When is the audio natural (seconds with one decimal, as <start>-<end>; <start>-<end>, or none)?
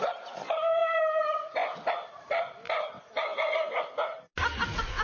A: 0.0-0.8; 3.8-5.0